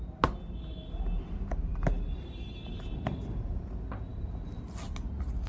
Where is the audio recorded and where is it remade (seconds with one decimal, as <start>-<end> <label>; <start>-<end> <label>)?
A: 0.0-5.5 recorded